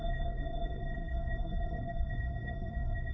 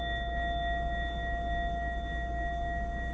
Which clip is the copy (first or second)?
first